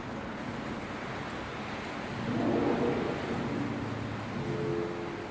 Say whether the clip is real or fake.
real